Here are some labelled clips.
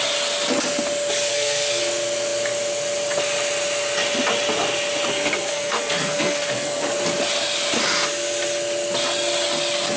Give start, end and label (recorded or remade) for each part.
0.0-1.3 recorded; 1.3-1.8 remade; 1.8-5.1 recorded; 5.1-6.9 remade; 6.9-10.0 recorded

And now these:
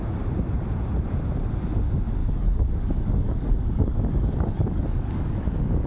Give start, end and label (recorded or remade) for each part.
0.0-2.2 recorded; 2.2-5.9 remade

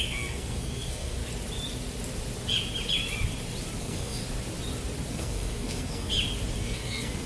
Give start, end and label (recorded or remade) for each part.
0.0-1.2 remade; 1.2-3.8 recorded; 3.8-4.2 remade; 4.2-5.1 recorded; 5.1-6.1 remade; 6.1-6.6 recorded; 6.6-7.3 remade

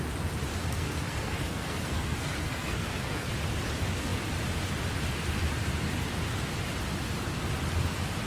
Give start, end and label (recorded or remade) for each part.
0.0-0.6 recorded; 0.6-3.3 remade; 3.3-8.3 recorded